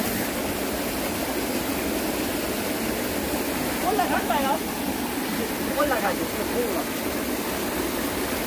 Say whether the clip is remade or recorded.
recorded